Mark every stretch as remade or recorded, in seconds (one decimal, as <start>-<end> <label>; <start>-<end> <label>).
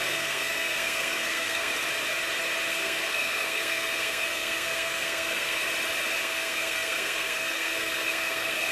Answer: 0.0-1.7 remade; 1.7-2.7 recorded; 2.7-5.6 remade; 5.6-6.2 recorded; 6.2-8.7 remade